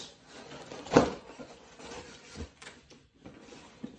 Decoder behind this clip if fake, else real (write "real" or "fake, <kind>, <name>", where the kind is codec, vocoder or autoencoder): fake, vocoder, Vocos